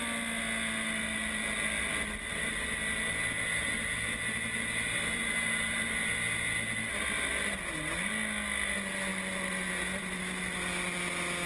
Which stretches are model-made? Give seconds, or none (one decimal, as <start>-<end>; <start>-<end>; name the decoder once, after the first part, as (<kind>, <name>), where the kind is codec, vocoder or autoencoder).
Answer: none